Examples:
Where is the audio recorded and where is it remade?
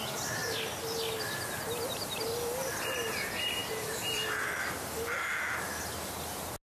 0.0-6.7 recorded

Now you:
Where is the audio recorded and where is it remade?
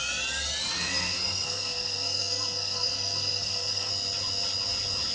0.0-0.8 recorded; 0.8-3.9 remade; 3.9-5.1 recorded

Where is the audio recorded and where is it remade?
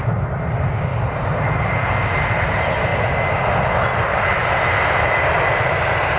0.0-6.2 recorded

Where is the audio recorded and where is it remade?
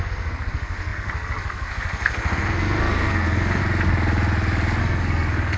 0.0-3.6 remade; 3.6-4.8 recorded; 4.8-5.6 remade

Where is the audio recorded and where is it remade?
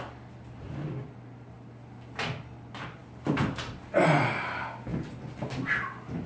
0.0-6.3 recorded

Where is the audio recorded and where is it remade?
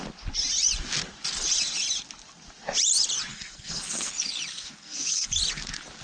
0.0-3.3 recorded; 3.3-4.1 remade; 4.1-4.5 recorded; 4.5-5.3 remade; 5.3-6.0 recorded